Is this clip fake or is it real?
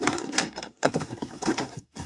fake